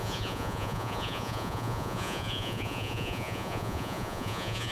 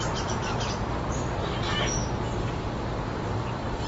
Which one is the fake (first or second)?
first